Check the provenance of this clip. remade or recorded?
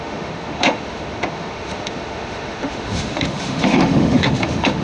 remade